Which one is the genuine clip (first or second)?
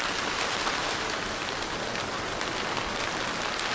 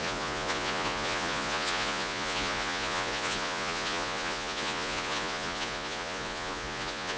first